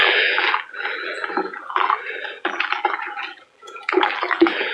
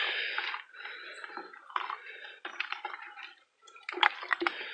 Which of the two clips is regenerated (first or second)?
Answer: first